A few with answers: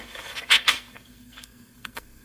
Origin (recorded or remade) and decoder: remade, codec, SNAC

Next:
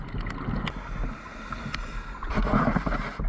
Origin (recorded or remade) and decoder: recorded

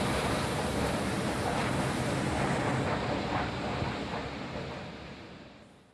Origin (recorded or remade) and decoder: remade, vocoder, BigVGAN v2